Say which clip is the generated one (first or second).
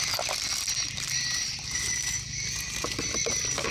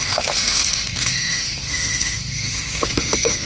second